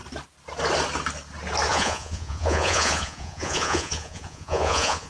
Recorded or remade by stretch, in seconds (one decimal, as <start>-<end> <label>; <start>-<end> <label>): 0.0-1.7 recorded; 1.7-5.1 remade